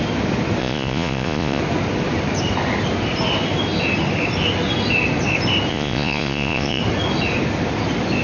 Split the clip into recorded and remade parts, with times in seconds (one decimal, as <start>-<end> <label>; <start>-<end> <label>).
0.0-0.6 recorded; 0.6-1.6 remade; 1.6-5.7 recorded; 5.7-6.8 remade; 6.8-8.2 recorded